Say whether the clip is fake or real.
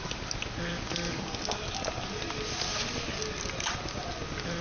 real